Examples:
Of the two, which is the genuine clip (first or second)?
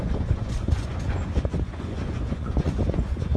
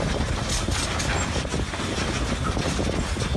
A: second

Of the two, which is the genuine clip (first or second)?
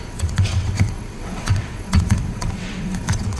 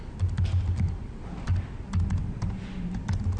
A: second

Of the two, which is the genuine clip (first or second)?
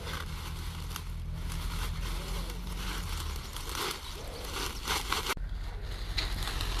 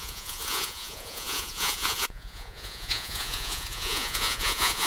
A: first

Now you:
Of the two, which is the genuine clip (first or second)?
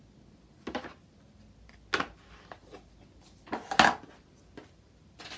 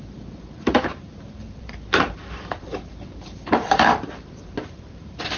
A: first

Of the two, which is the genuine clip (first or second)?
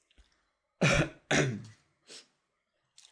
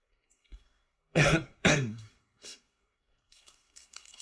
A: first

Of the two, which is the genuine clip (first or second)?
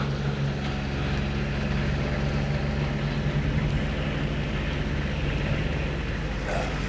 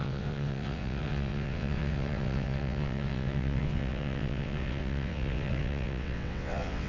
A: first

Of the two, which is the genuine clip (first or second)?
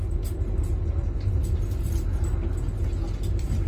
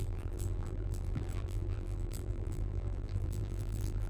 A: first